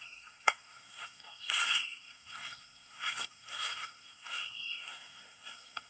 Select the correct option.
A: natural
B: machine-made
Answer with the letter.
B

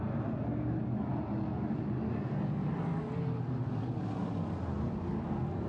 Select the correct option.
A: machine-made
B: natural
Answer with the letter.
B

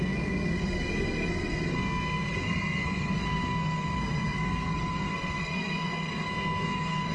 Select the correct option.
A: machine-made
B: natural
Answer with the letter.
A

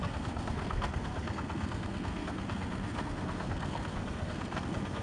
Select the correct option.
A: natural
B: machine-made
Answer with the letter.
B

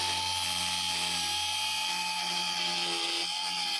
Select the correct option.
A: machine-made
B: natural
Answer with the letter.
B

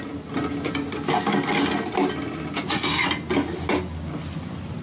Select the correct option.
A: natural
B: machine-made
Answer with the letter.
A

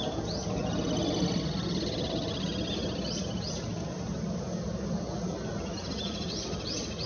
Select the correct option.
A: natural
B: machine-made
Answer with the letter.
A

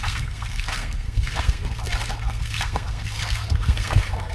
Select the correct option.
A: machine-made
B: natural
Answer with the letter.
A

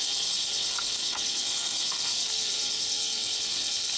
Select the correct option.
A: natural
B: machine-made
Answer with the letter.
B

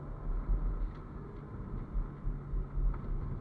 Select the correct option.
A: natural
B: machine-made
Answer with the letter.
A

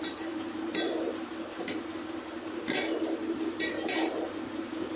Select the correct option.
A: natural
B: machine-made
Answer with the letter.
A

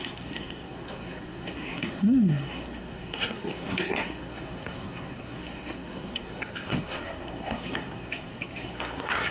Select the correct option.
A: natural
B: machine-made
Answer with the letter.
B